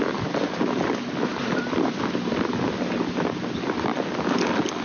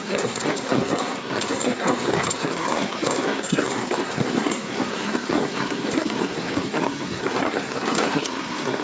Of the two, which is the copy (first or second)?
second